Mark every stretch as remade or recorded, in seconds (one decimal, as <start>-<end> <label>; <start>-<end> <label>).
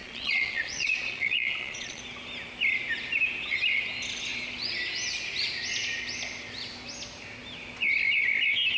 0.0-2.0 remade; 2.0-8.8 recorded